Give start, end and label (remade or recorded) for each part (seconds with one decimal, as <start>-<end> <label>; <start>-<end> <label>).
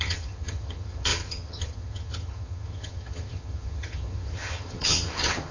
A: 0.0-5.5 remade